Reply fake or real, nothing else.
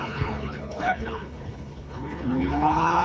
fake